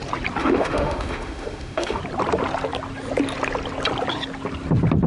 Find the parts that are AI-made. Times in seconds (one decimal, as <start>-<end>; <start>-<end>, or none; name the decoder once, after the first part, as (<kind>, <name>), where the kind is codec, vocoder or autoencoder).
0.4-2.0 (autoencoder, DAC-VAE)